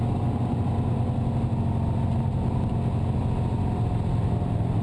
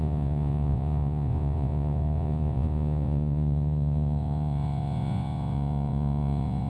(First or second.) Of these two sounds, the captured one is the first